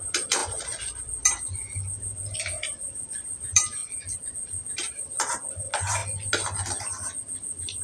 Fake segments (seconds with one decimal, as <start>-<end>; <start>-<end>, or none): 0.0-3.8; 4.3-6.0; 7.2-7.8